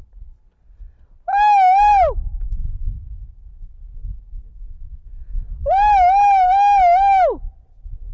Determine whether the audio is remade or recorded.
recorded